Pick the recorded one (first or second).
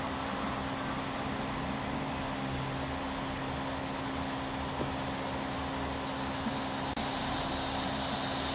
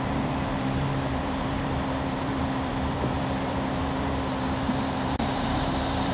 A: first